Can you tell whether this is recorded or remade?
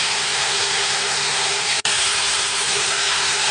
remade